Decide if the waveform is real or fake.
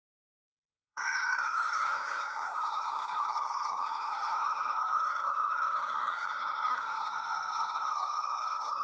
fake